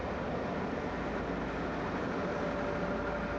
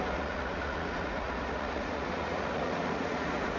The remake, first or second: second